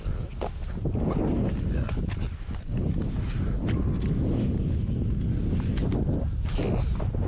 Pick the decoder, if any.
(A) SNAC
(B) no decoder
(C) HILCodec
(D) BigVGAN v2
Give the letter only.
B